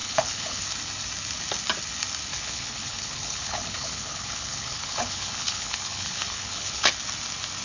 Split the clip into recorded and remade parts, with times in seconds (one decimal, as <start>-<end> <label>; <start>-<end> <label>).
0.0-0.6 remade; 0.6-2.3 recorded; 2.3-6.9 remade; 6.9-7.6 recorded